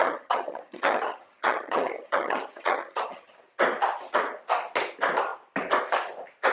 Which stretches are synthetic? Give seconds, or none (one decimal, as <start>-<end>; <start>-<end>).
0.0-3.3